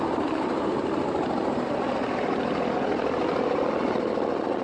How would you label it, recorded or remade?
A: recorded